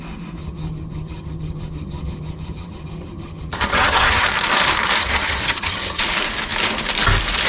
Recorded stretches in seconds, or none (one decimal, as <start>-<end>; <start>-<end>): 0.0-0.4; 4.2-5.0; 6.0-7.5